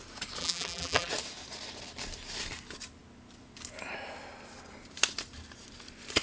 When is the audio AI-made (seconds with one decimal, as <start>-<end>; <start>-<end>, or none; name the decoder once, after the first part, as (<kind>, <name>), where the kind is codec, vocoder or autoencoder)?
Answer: 0.4-1.1 (vocoder, BigVGAN v2)